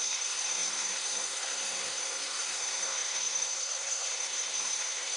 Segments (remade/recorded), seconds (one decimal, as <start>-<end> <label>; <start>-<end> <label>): 0.0-5.2 remade